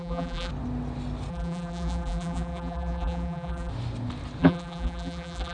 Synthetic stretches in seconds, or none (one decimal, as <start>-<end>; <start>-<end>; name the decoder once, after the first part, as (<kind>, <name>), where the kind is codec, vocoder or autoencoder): 0.0-0.5 (vocoder, BigVGAN v2); 1.3-3.7; 4.4-5.5

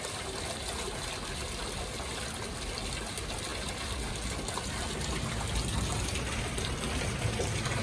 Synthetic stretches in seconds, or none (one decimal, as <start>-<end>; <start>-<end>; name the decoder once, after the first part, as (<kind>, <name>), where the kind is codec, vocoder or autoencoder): none

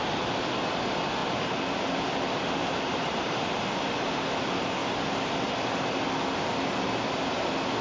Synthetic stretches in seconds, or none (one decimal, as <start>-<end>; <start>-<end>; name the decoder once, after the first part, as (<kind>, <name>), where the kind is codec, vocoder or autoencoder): 2.6-3.8 (vocoder, BigVGAN v2)

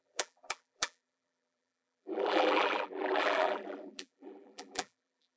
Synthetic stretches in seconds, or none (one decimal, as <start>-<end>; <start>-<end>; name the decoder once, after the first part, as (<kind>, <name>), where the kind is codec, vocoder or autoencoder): 0.0-5.4 (vocoder, BigVGAN v2)

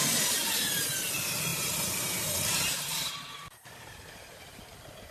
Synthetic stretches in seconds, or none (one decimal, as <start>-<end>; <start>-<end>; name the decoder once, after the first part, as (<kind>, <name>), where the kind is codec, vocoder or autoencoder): 0.0-0.7 (vocoder, BigVGAN v2); 1.5-4.6